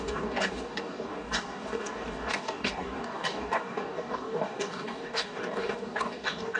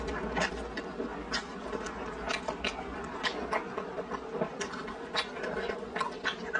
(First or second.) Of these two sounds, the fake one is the first